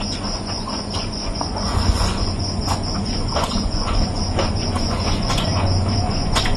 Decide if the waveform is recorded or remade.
remade